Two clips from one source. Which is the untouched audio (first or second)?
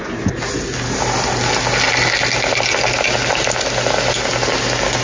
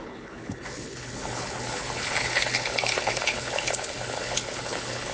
first